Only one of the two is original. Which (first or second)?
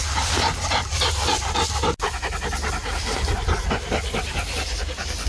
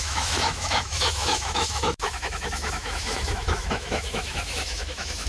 first